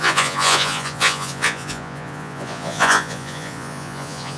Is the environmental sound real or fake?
fake